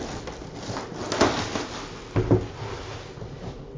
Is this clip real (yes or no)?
yes